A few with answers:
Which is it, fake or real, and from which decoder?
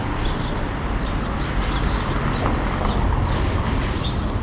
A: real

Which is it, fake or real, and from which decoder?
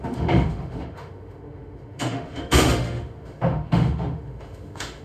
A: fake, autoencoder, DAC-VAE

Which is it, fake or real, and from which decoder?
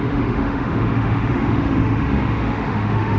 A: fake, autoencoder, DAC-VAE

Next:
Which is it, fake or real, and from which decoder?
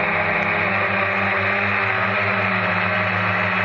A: real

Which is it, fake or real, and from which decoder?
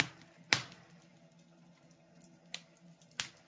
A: real